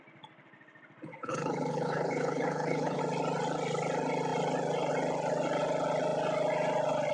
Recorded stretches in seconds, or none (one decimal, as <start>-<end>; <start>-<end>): 0.0-1.1; 3.0-7.1